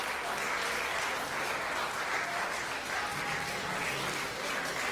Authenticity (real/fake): real